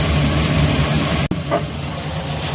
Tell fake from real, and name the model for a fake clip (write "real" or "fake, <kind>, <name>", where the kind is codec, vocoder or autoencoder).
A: real